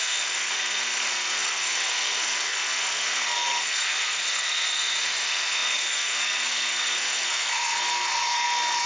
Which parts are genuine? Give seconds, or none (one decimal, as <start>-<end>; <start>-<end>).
none